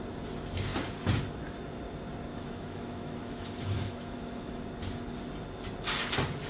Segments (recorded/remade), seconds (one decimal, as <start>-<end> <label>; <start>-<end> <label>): 0.0-2.3 recorded; 2.3-4.6 remade; 4.6-6.5 recorded